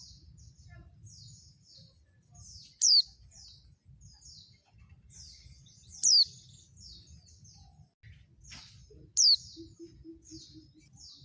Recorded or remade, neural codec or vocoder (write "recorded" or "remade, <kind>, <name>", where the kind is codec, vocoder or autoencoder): recorded